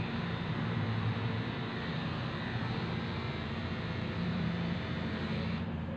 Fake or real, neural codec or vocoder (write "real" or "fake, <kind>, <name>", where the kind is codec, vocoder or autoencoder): fake, vocoder, BigVGAN v2